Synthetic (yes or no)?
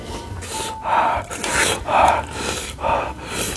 yes